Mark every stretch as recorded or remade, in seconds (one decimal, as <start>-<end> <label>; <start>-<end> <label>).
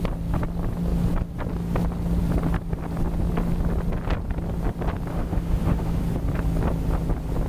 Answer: 0.0-5.1 recorded; 5.1-6.0 remade; 6.0-7.5 recorded